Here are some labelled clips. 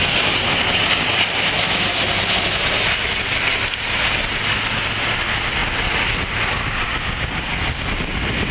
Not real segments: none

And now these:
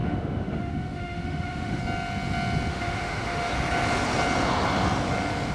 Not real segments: 0.0-1.8 (autoencoder, DAC-VAE); 2.7-3.5